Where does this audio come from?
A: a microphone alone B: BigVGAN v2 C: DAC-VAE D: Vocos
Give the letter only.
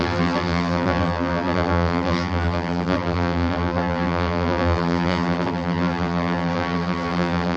B